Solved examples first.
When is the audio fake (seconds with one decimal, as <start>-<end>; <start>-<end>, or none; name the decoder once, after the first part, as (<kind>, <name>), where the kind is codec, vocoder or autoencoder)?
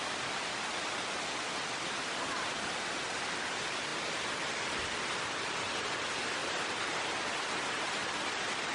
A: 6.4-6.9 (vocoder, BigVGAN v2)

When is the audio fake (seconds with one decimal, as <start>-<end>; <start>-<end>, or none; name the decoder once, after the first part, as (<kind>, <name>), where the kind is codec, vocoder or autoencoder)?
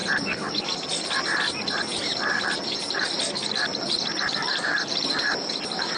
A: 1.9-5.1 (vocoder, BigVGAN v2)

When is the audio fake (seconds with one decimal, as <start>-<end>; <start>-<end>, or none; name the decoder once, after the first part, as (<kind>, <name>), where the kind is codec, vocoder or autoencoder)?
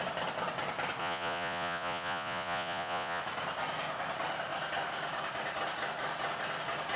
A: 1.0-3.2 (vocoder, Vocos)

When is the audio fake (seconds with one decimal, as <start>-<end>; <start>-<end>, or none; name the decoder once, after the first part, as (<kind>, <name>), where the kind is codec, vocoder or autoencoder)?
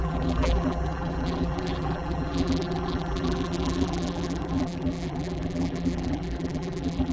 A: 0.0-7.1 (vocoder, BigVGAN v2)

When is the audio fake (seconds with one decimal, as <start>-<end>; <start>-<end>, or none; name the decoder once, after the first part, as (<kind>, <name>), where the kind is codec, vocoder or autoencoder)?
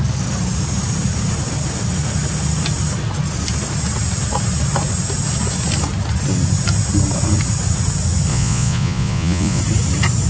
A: 8.3-9.6 (vocoder, Vocos)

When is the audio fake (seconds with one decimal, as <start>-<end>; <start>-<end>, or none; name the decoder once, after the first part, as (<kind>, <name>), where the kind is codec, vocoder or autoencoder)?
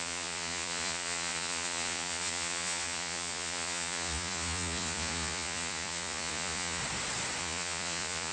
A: 0.0-6.8 (vocoder, Vocos); 7.4-8.3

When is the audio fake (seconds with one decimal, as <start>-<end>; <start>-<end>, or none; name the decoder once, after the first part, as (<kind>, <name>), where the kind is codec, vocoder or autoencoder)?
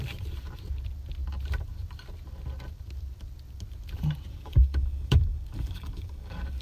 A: 4.3-6.6 (codec, DAC)